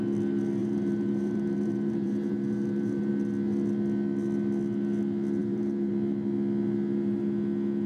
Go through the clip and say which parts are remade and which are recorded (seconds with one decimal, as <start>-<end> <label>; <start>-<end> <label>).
0.0-0.6 recorded; 0.6-3.1 remade; 3.1-5.4 recorded; 5.4-5.9 remade; 5.9-7.9 recorded